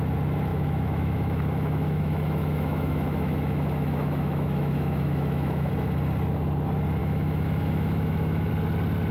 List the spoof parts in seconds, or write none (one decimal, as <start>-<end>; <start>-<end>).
0.5-5.7; 7.0-8.5